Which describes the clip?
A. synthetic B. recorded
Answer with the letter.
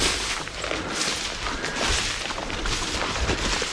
B